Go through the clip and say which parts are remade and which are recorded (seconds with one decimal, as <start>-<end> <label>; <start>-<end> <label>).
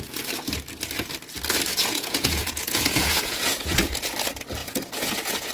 0.0-1.7 recorded; 1.7-4.1 remade; 4.1-4.6 recorded; 4.6-5.5 remade